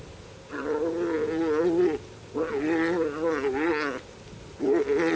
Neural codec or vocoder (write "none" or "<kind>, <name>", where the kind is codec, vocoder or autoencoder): none